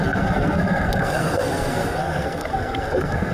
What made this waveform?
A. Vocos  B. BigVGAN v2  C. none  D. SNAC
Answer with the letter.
D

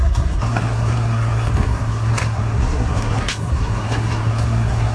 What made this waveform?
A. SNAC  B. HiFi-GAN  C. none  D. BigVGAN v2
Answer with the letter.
A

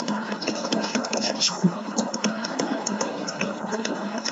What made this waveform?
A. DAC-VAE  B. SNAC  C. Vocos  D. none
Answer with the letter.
B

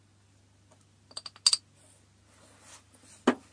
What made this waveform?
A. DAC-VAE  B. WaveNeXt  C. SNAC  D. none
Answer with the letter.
D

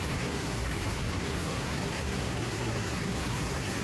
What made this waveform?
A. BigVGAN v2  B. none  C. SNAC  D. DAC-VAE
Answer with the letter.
C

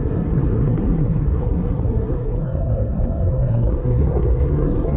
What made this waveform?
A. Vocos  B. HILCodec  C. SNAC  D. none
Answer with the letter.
C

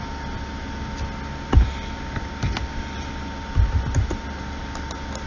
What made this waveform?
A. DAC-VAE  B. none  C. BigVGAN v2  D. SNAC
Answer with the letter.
B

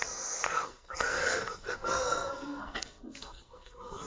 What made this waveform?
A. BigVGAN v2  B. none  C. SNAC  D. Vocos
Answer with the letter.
C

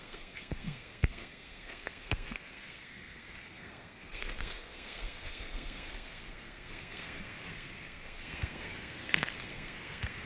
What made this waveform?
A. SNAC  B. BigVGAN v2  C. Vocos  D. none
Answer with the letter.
A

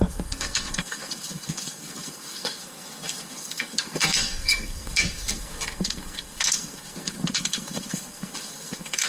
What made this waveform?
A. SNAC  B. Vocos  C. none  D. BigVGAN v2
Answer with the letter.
A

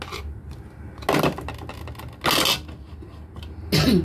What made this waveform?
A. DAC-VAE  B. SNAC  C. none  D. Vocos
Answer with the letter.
C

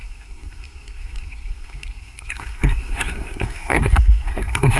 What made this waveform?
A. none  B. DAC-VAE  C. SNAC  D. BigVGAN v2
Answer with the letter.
C